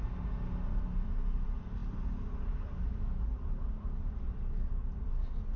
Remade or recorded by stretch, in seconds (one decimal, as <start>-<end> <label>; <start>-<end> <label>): 0.0-5.6 recorded